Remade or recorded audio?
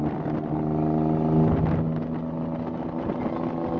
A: recorded